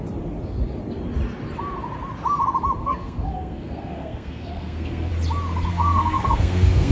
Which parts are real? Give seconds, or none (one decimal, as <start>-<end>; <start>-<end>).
0.0-2.8; 5.1-5.7